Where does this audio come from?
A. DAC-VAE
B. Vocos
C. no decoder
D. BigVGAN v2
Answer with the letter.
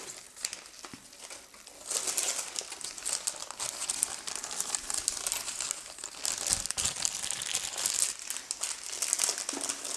C